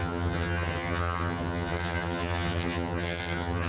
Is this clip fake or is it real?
fake